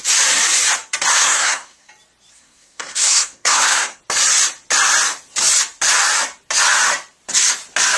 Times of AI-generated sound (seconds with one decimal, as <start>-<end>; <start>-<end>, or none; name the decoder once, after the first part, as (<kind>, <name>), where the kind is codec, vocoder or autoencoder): 1.1-1.9 (codec, SNAC); 2.3-4.0